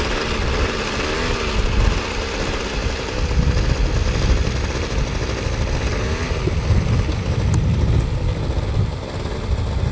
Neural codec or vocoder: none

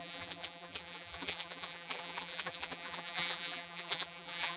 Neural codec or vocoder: vocoder, BigVGAN v2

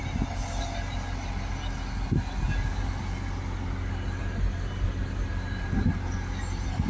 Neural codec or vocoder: none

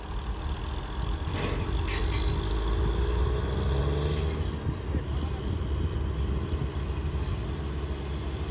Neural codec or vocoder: none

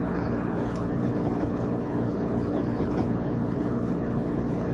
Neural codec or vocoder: codec, HILCodec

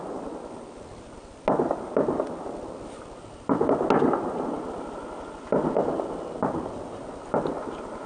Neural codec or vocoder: none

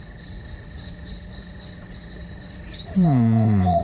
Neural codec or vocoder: vocoder, Vocos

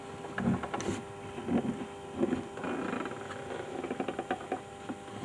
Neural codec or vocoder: none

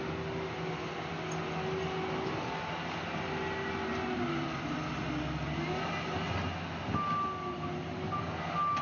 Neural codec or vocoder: none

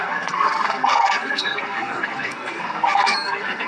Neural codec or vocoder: codec, SNAC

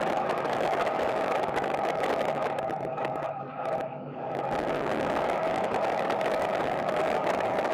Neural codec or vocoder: codec, DAC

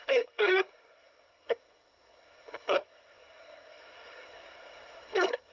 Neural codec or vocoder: codec, SNAC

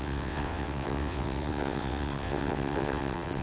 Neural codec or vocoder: vocoder, WaveNeXt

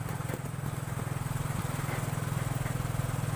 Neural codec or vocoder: none